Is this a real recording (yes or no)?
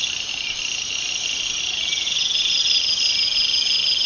yes